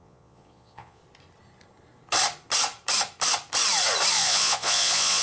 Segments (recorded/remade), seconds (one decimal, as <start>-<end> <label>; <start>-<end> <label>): 0.0-1.0 remade; 1.0-4.1 recorded; 4.1-5.2 remade